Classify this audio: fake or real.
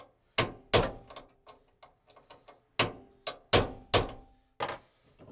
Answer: real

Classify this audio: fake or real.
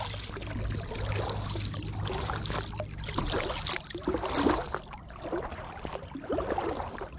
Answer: real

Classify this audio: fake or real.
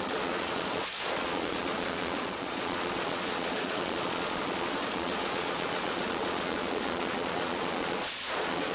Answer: fake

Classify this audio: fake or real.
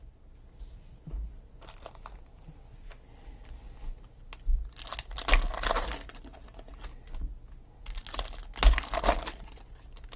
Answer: real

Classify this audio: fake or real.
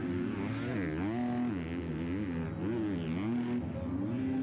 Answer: real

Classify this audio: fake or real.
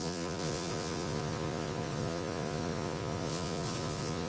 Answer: fake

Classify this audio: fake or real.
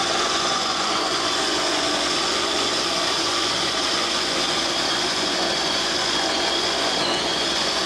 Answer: fake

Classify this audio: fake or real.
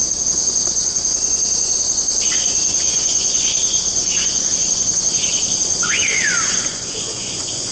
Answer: fake